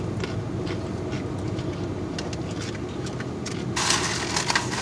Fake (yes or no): no